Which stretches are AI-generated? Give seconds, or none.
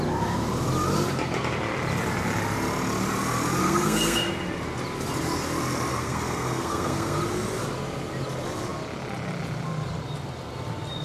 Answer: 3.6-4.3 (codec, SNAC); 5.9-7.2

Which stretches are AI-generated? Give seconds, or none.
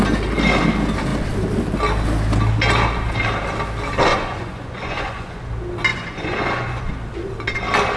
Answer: 4.1-5.5 (vocoder, Vocos); 5.9-6.9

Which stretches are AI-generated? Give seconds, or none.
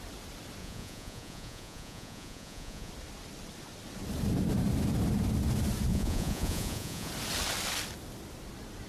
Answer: 0.6-2.9 (vocoder, Vocos); 5.9-7.1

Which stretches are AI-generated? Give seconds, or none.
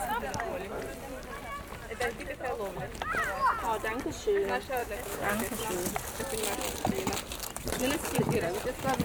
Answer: 4.8-5.6 (autoencoder, DAC-VAE)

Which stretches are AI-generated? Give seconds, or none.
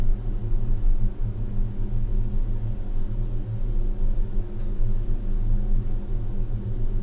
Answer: none